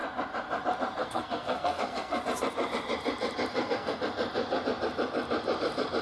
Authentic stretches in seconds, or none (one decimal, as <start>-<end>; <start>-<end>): 0.0-1.0; 2.2-3.5; 4.0-6.0